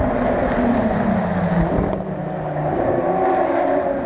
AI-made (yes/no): no